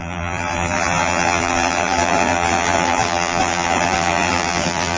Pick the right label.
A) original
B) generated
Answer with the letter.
B